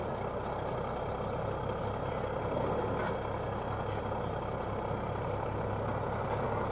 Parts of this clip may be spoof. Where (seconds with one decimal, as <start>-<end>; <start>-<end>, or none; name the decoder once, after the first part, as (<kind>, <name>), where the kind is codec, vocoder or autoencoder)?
none

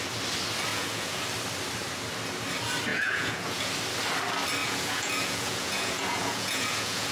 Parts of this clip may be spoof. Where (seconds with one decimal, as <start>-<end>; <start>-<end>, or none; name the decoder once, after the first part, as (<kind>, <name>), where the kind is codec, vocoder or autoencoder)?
0.7-1.2 (vocoder, Vocos); 2.9-3.7; 4.6-7.1

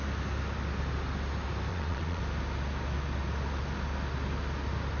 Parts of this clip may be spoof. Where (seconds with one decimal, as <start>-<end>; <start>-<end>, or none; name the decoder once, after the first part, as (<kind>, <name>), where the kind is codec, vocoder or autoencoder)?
1.7-2.2 (vocoder, Vocos)